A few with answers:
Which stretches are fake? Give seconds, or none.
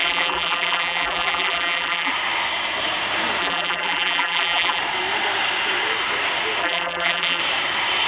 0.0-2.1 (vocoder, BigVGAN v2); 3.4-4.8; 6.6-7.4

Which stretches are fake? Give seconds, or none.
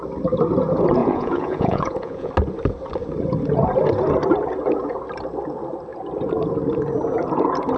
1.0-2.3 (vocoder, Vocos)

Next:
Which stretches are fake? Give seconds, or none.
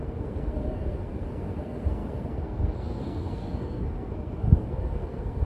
0.0-5.4 (codec, SNAC)